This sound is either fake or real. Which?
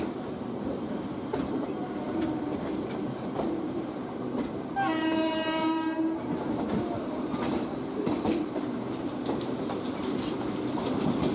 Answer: fake